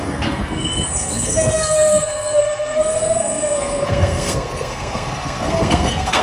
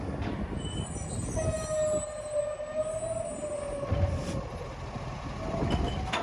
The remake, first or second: first